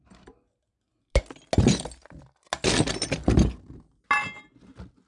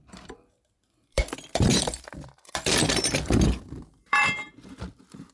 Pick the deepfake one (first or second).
second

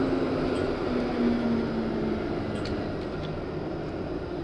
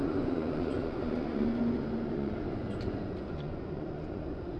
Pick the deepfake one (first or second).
second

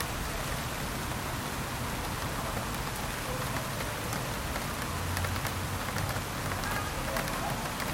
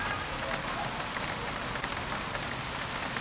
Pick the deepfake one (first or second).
second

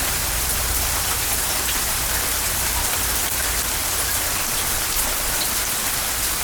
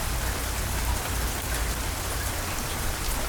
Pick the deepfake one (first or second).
first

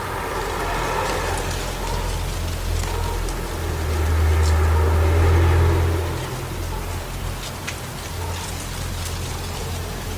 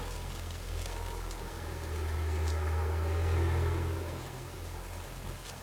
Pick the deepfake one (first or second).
second